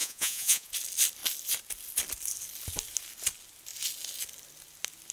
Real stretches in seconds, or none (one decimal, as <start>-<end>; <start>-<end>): 0.7-5.1